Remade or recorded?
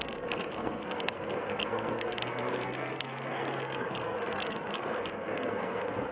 remade